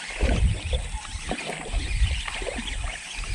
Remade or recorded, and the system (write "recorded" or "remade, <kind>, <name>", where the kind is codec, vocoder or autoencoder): recorded